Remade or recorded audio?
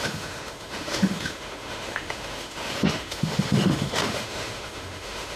remade